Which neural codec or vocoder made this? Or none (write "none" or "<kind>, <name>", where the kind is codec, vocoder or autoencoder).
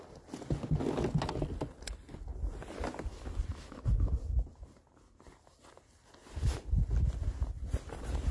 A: none